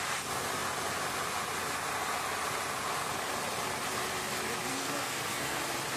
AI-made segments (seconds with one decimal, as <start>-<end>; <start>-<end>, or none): 4.7-5.6